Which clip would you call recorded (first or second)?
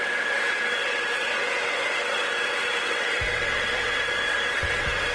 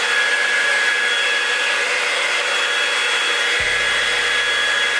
second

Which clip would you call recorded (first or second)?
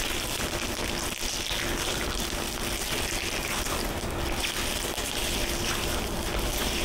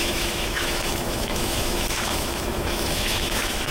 first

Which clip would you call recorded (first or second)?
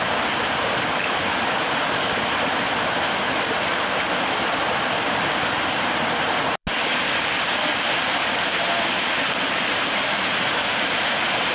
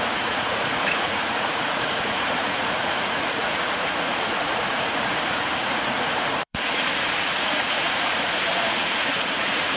first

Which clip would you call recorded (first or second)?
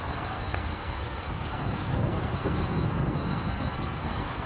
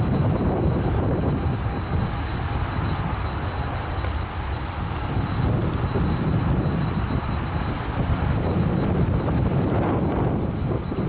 second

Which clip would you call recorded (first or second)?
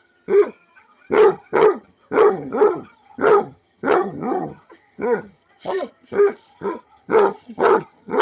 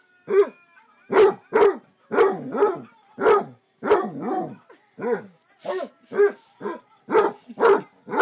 second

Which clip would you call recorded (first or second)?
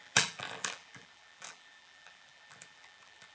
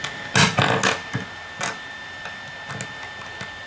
second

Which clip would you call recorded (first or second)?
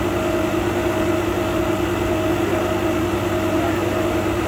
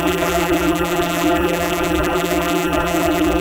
first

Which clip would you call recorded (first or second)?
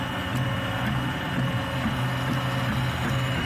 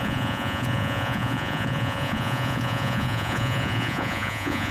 first